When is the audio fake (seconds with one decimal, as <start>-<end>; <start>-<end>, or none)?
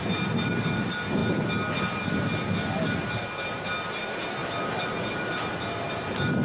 none